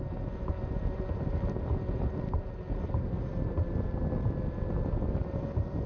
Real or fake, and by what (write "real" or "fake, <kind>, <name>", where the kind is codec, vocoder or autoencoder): real